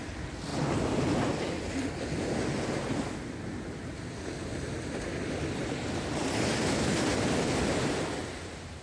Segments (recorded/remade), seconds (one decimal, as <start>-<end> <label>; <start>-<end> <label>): 0.0-8.8 recorded